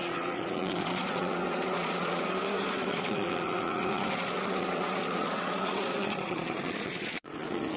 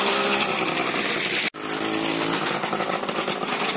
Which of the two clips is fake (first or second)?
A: first